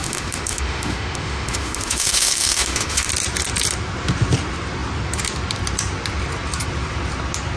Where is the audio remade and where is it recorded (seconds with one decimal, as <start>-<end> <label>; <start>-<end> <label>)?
0.0-3.1 remade; 3.1-7.6 recorded